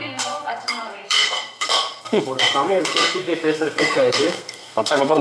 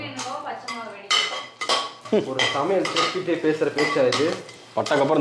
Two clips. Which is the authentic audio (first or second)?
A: second